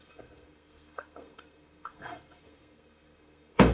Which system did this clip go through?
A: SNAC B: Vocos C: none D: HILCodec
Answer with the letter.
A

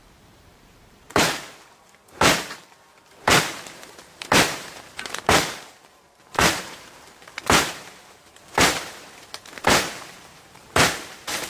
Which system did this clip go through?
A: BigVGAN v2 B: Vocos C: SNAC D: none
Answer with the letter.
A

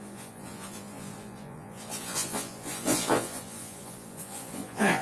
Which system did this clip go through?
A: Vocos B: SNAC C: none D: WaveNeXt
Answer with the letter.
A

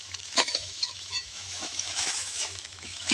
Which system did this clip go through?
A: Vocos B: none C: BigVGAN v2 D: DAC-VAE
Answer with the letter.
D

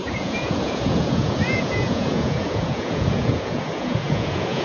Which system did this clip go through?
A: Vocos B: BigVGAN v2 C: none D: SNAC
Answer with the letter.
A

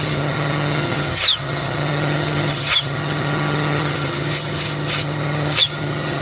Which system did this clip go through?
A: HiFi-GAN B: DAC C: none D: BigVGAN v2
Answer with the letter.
A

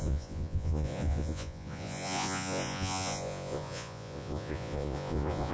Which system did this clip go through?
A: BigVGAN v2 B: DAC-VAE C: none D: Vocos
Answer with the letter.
D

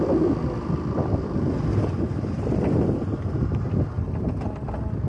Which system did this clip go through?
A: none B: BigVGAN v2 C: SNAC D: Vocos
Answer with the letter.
A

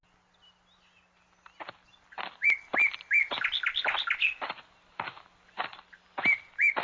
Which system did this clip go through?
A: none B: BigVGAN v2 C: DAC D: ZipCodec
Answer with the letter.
A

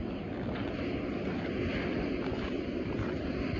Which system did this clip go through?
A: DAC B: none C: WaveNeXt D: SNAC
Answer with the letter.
B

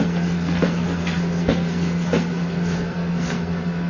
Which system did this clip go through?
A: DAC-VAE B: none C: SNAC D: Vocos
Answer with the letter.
C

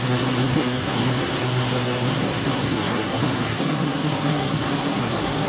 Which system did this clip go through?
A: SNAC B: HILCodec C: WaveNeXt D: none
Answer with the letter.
A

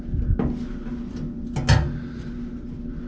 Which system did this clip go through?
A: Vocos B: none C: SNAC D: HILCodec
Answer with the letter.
B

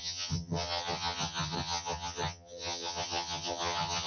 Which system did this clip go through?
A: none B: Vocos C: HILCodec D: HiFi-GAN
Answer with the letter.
D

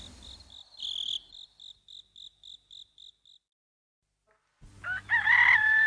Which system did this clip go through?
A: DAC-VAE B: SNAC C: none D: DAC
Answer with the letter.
C